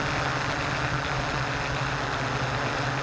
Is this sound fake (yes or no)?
no